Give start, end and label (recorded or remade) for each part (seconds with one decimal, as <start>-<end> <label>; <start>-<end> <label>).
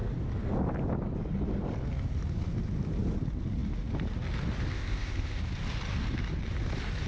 0.0-4.7 recorded; 4.7-5.4 remade; 5.4-7.1 recorded